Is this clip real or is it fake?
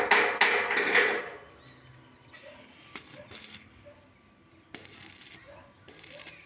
real